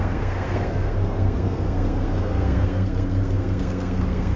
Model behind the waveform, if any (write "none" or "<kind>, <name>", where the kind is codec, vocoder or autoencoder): codec, SNAC